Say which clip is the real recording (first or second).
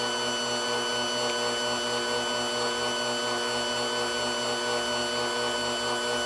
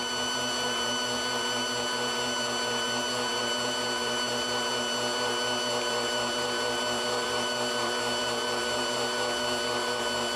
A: first